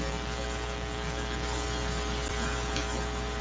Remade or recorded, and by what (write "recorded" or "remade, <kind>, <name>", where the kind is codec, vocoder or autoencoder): recorded